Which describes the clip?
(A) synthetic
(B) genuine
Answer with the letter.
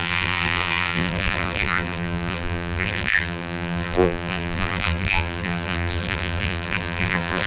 A